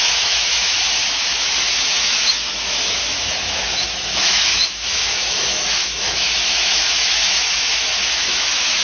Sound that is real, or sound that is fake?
fake